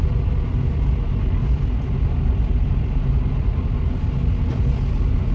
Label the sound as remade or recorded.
recorded